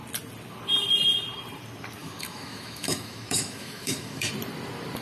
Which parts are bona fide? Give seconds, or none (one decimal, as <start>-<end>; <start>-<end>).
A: 0.0-2.0; 4.3-5.0

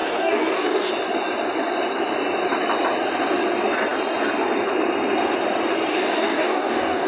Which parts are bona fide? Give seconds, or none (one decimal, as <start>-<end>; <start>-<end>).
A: 0.9-5.9

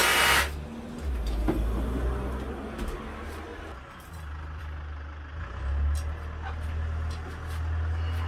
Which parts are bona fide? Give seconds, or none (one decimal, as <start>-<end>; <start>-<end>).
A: 0.0-8.3

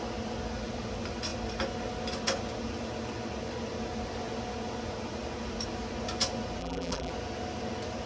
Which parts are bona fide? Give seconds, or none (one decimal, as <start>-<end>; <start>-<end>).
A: 0.0-6.6; 7.1-8.1

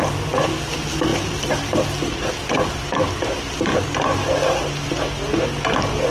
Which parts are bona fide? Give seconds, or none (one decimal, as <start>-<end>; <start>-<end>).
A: 0.0-1.1; 4.6-6.1

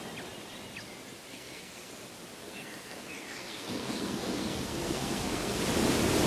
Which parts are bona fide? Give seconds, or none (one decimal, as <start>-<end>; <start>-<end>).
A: 0.0-1.3; 1.9-2.4; 5.6-6.3